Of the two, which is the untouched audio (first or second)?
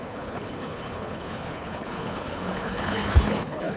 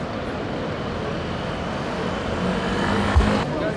second